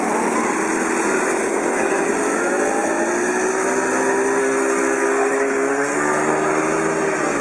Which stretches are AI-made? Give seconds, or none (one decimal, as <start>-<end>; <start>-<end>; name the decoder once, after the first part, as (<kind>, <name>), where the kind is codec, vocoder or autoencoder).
1.4-2.1 (codec, SNAC); 4.4-6.5